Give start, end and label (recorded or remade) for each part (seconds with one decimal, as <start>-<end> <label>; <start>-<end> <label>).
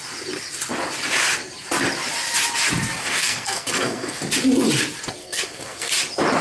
0.0-3.0 recorded; 3.0-4.2 remade; 4.2-5.2 recorded; 5.2-5.9 remade; 5.9-6.4 recorded